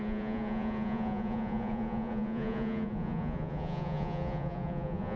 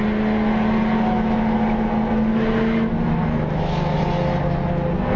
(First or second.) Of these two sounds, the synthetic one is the first